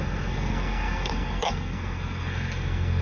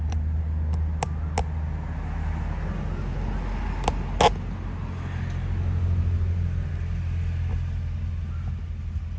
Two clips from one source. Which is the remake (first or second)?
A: first